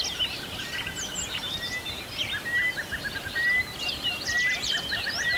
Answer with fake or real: real